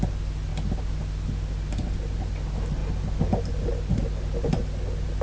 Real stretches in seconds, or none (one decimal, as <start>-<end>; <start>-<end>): 0.0-5.2